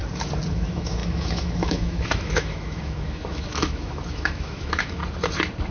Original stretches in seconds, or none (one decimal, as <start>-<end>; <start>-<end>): 0.0-0.5; 5.0-5.7